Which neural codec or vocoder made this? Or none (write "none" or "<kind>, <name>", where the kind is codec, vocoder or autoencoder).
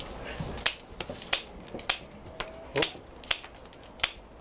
none